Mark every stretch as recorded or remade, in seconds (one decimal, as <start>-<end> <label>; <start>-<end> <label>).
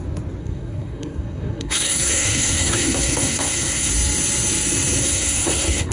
0.0-0.4 recorded; 0.4-3.9 remade; 3.9-5.0 recorded; 5.0-5.9 remade